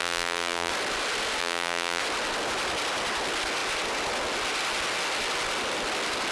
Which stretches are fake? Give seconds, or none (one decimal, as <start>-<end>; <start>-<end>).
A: 0.0-0.7; 1.4-2.0